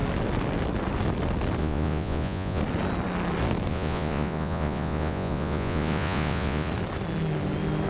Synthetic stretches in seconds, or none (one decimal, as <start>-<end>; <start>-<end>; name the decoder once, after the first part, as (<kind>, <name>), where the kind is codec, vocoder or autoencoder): 1.6-2.6 (vocoder, Vocos); 3.7-6.7